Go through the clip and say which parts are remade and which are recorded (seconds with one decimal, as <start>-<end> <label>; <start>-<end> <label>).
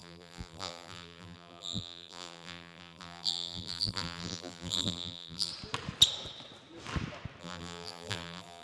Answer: 0.0-5.5 remade; 5.5-7.4 recorded; 7.4-8.6 remade